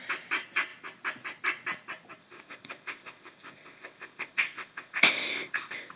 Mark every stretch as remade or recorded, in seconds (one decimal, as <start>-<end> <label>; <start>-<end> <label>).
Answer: 0.0-2.2 recorded; 2.2-6.0 remade